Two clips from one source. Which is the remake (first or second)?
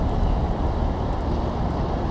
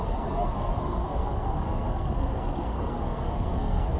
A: second